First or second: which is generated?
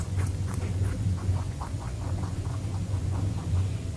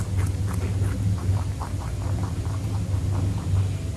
first